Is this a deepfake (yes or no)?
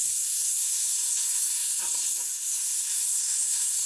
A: yes